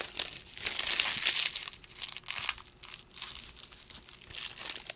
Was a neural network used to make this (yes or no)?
no